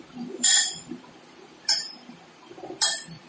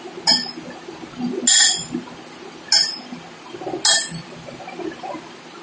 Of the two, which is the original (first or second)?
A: second